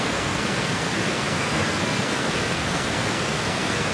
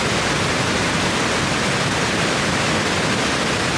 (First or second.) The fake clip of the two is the first